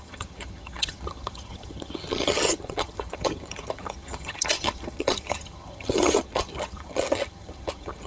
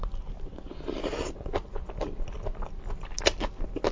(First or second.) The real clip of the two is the second